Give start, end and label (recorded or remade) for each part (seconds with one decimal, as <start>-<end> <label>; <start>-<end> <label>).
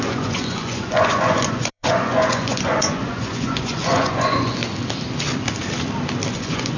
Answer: 0.0-4.6 remade; 4.6-6.3 recorded; 6.3-6.8 remade